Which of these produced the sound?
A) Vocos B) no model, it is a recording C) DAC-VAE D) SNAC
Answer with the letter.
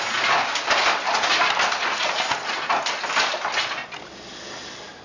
B